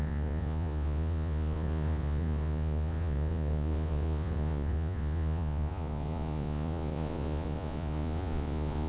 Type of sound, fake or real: fake